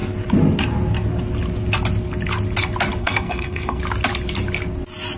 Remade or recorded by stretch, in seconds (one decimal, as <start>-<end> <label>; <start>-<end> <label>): 0.0-3.0 recorded; 3.0-3.8 remade; 3.8-5.2 recorded